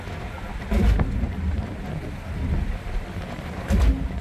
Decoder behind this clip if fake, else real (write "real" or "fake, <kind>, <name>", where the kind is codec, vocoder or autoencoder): real